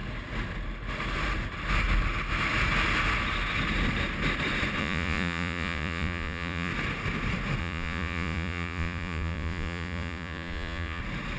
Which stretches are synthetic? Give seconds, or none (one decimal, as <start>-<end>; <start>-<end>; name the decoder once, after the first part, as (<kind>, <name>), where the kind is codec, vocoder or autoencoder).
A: 4.8-6.7 (vocoder, Vocos); 7.6-11.0